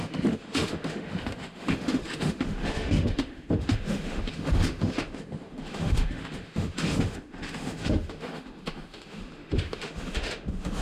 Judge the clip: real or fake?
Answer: fake